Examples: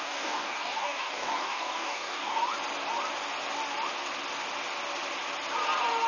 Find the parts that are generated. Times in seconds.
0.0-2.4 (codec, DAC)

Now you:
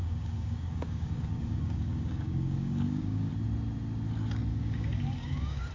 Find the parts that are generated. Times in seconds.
0.0-3.3 (codec, DAC); 4.5-5.7

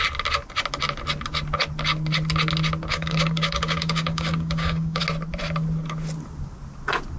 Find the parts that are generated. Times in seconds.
2.9-5.0 (codec, DAC)

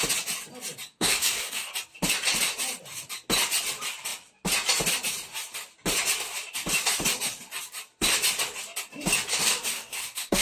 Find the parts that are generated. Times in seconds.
0.9-1.7 (codec, DAC); 9.3-10.4

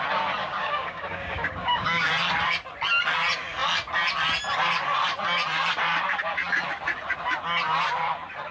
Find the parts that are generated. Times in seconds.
0.4-2.1 (codec, DAC)

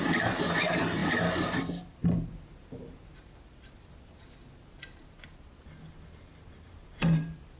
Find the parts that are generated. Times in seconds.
none